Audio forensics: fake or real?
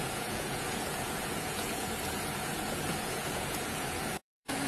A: fake